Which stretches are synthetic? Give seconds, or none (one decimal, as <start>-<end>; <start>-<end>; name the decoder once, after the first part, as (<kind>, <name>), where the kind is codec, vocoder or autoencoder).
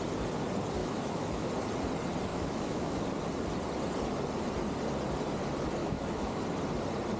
0.8-1.5 (autoencoder, DAC-VAE); 2.3-3.0; 5.8-6.4